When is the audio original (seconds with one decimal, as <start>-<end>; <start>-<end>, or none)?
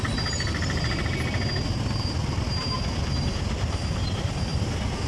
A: 0.0-5.1